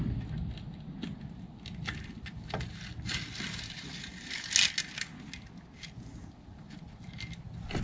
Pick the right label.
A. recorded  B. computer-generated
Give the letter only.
A